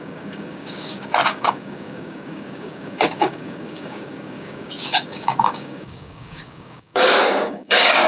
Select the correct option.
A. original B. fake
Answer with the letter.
B